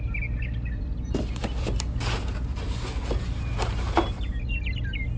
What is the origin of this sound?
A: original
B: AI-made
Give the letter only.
A